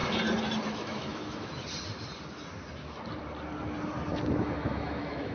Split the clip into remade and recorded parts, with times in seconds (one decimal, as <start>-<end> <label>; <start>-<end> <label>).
0.0-0.7 recorded; 0.7-1.6 remade; 1.6-4.4 recorded; 4.4-5.3 remade